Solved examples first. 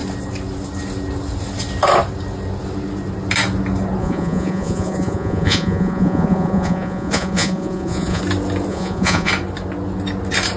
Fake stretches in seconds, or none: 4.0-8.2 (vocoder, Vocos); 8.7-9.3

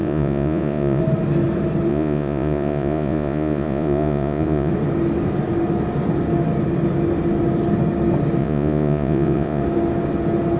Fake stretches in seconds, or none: 0.0-1.0 (vocoder, Vocos); 1.9-4.7; 8.4-9.6